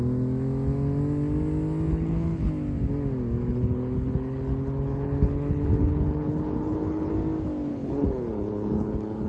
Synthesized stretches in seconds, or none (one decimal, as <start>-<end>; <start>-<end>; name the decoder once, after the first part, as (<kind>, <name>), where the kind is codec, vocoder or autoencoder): 1.9-2.5 (codec, HILCodec); 3.5-7.1; 7.7-9.3